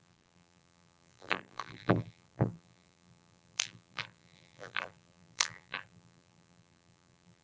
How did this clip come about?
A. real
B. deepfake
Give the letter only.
B